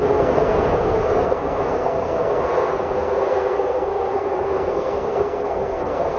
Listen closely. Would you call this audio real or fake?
fake